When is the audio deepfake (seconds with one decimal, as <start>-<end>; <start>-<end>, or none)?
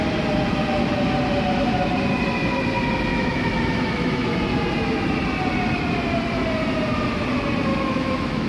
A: 3.1-4.3; 7.7-8.5